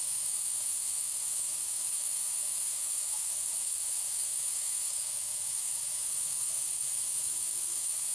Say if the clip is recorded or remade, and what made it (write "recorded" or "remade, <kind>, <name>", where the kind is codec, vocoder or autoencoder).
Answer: remade, autoencoder, DAC-VAE